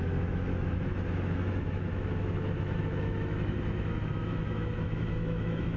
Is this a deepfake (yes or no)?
yes